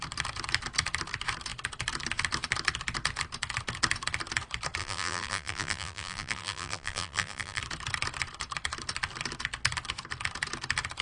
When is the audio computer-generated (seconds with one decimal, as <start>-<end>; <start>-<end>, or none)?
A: 4.8-7.6